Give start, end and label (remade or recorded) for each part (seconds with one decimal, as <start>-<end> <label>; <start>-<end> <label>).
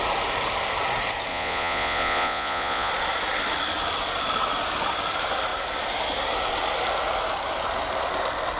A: 0.0-1.3 recorded; 1.3-2.9 remade; 2.9-8.6 recorded